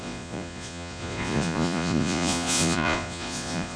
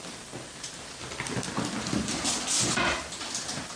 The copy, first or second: first